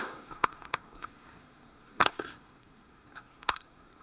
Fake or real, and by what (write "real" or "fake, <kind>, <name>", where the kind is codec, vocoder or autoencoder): fake, codec, SNAC